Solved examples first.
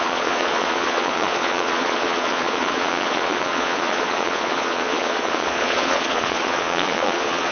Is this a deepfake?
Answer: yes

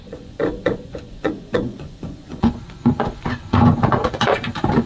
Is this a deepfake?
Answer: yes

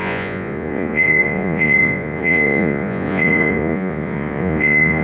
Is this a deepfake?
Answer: yes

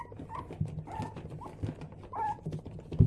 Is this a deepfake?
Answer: no